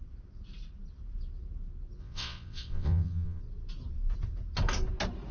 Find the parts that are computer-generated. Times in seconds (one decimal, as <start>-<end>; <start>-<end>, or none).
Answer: 2.0-3.4